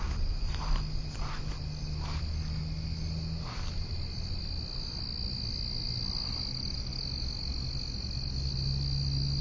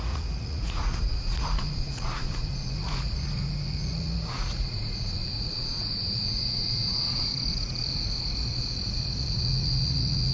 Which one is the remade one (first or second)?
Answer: second